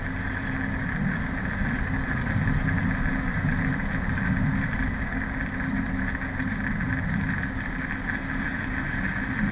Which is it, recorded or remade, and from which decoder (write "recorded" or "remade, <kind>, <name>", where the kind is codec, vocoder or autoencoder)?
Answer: recorded